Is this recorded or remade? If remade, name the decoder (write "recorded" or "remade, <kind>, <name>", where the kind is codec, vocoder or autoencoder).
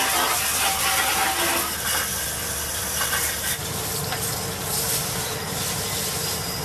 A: recorded